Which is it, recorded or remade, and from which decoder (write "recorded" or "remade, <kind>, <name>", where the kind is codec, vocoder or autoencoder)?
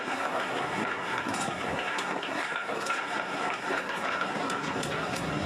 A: remade, codec, SNAC